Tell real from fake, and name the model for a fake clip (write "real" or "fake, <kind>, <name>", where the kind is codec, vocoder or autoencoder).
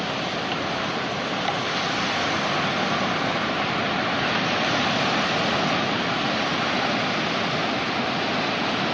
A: real